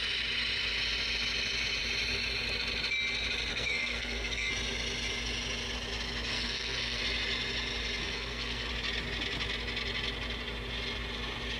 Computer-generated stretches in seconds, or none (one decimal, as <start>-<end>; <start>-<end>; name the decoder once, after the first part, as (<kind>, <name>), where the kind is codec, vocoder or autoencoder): 3.5-4.5 (codec, SNAC); 6.3-7.0; 8.0-8.7